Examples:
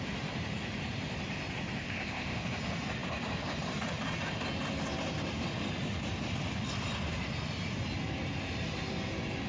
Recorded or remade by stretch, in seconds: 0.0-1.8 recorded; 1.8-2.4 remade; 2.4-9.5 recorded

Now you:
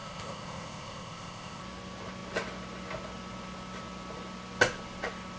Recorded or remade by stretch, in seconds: 0.0-1.6 remade; 1.6-5.4 recorded

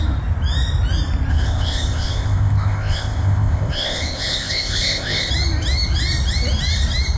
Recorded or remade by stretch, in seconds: 0.0-1.3 recorded; 1.3-5.3 remade; 5.3-7.2 recorded

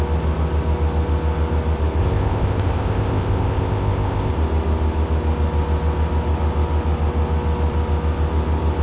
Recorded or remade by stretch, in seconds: 0.0-2.0 recorded; 2.0-4.3 remade; 4.3-8.8 recorded

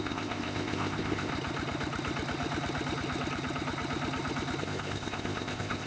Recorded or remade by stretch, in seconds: 0.0-1.3 remade; 1.3-4.6 recorded; 4.6-5.9 remade

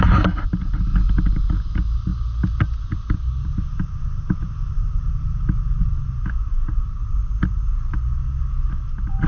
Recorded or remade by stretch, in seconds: 0.0-9.3 recorded

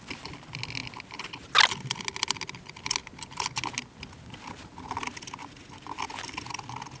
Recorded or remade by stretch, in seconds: 0.0-7.0 recorded

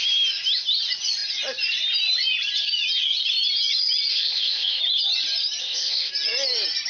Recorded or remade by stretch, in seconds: 0.0-4.1 recorded; 4.1-4.8 remade; 4.8-5.6 recorded; 5.6-6.1 remade; 6.1-6.9 recorded